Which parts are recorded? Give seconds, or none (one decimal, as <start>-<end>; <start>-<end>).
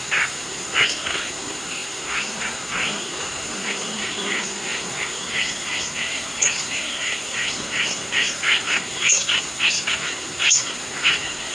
none